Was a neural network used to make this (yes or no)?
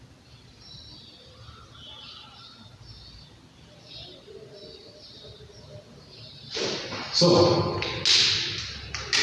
no